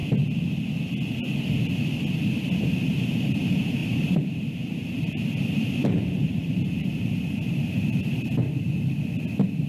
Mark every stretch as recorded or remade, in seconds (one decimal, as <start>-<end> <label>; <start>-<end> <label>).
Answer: 0.0-3.8 recorded; 3.8-9.0 remade; 9.0-9.7 recorded